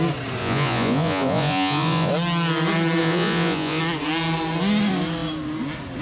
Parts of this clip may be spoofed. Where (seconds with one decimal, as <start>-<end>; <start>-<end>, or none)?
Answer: 0.4-2.1; 3.0-3.8